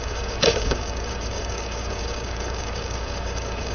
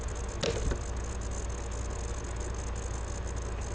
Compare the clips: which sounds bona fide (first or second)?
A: second